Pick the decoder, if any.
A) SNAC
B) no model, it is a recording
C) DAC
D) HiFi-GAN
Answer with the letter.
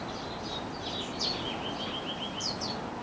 B